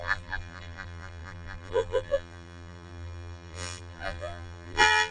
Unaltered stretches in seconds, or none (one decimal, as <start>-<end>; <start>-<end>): none